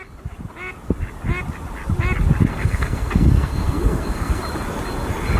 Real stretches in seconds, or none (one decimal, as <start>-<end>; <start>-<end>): 0.0-2.5; 4.4-5.4

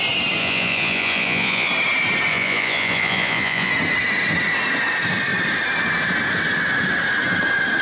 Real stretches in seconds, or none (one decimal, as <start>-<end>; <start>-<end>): 0.0-0.4; 1.7-2.3; 3.7-7.8

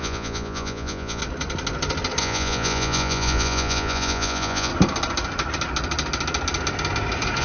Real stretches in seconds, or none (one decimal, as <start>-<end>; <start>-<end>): 1.2-2.2; 4.7-7.4